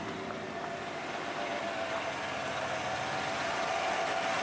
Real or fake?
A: real